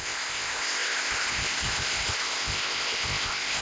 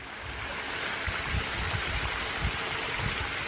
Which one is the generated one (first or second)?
first